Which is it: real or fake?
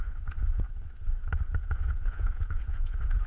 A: fake